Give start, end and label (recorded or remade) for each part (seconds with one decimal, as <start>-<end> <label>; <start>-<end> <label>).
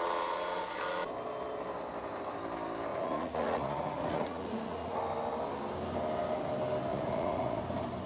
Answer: 0.0-2.9 recorded; 2.9-5.0 remade; 5.0-6.9 recorded; 6.9-7.6 remade; 7.6-8.1 recorded